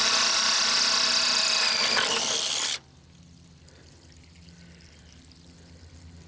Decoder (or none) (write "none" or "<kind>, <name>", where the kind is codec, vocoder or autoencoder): none